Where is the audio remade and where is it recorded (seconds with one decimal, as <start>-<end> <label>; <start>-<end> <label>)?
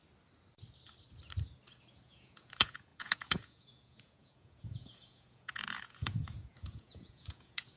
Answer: 0.0-1.9 recorded; 1.9-7.8 remade